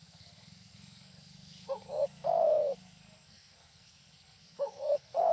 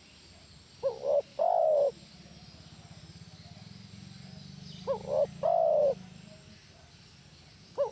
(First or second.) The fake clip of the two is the first